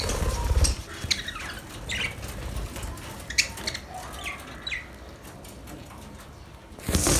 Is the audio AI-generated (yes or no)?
no